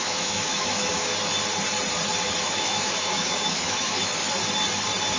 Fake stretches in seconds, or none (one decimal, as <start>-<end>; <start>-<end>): 0.0-1.1; 2.4-4.1